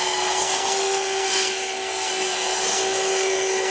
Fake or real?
fake